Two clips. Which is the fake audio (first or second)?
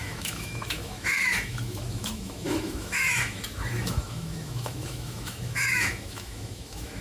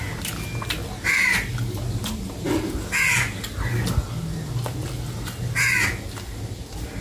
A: first